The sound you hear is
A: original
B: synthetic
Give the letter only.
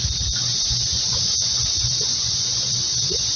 B